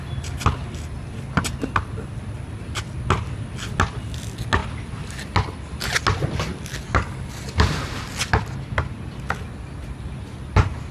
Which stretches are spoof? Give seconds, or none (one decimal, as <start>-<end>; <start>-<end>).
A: none